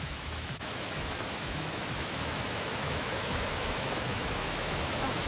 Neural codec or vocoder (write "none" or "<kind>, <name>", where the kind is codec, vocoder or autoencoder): autoencoder, DAC-VAE